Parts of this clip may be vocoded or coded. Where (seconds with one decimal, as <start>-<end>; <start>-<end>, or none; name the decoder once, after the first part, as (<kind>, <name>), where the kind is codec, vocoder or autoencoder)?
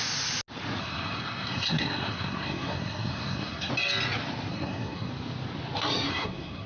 0.8-3.7 (codec, SNAC); 4.5-5.1; 6.1-6.7